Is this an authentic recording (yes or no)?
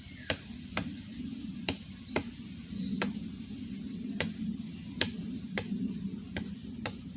no